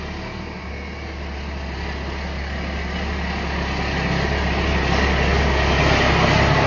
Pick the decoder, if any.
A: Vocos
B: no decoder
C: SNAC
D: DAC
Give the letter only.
B